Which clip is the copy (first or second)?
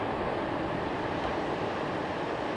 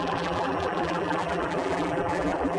second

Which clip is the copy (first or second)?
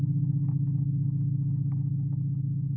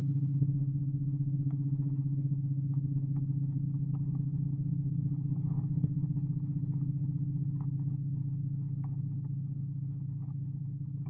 second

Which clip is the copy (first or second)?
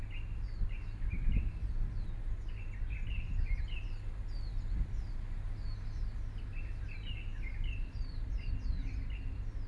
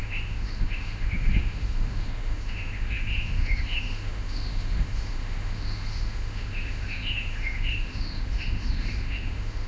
second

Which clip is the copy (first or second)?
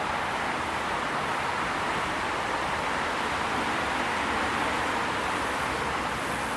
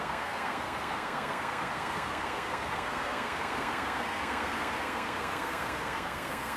second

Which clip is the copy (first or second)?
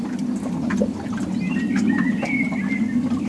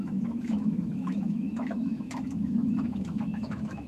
second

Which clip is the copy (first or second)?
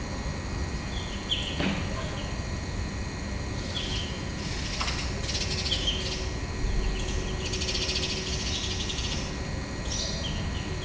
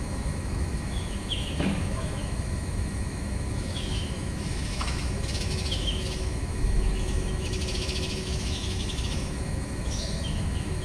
second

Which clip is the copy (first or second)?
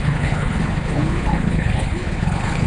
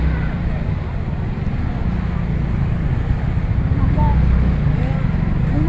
first